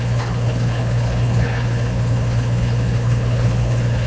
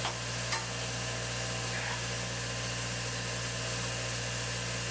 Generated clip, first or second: first